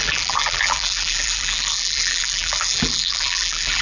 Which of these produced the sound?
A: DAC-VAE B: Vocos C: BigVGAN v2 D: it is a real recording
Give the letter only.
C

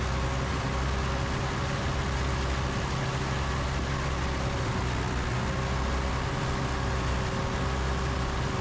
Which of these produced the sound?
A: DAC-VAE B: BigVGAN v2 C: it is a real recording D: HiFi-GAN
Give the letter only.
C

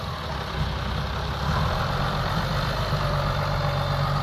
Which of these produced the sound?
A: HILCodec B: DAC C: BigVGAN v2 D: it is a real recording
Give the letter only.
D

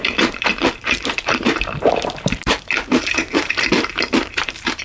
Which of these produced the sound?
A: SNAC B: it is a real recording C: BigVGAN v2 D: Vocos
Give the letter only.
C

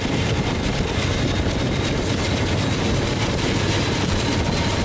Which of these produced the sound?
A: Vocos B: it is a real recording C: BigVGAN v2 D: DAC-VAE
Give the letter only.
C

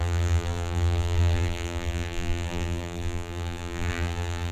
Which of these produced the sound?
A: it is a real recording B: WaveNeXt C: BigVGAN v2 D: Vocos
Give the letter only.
C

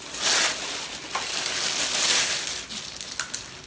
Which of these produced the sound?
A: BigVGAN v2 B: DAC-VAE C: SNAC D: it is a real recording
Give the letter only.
D